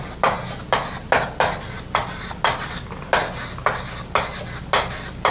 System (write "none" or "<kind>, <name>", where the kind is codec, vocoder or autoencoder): none